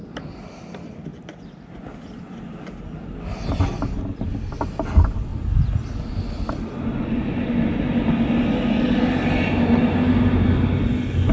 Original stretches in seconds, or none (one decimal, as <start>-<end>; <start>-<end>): 0.0-11.3